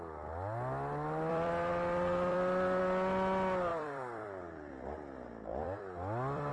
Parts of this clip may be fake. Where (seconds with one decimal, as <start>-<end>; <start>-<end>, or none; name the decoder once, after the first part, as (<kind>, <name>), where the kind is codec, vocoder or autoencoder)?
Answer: 1.3-2.8 (vocoder, BigVGAN v2); 3.7-4.7; 5.5-6.5